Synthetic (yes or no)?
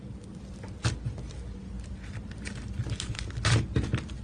no